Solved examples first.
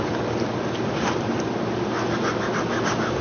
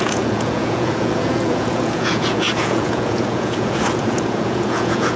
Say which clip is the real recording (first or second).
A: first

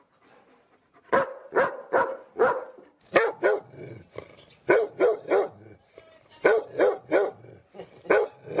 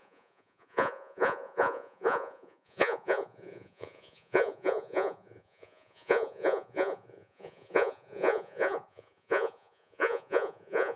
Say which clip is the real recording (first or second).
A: first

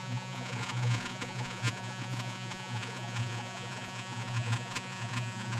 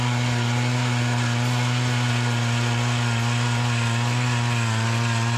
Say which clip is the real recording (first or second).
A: second